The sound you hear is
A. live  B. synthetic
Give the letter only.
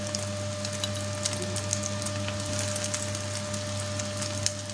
A